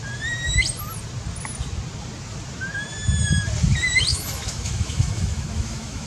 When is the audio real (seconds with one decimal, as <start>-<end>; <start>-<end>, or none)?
0.0-4.1